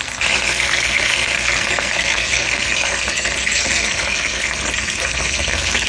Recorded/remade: remade